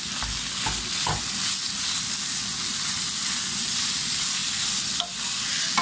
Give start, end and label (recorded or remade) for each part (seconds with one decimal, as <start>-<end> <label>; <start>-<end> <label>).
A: 0.0-5.8 recorded